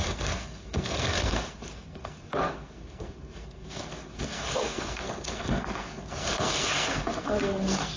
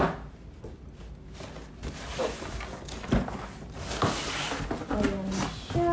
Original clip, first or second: second